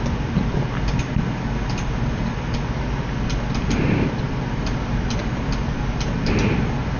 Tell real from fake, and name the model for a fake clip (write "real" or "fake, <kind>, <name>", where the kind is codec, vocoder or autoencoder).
real